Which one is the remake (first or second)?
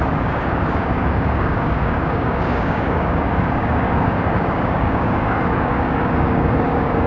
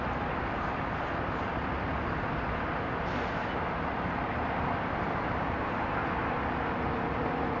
first